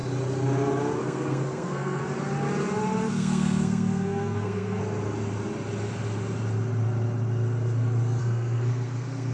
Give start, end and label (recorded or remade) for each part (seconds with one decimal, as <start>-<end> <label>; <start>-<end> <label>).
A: 0.0-1.0 recorded; 1.0-2.0 remade; 2.0-3.1 recorded; 3.1-4.8 remade; 4.8-8.2 recorded; 8.2-9.3 remade